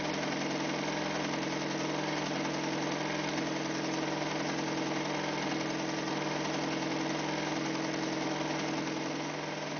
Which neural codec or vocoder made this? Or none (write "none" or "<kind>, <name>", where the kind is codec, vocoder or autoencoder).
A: none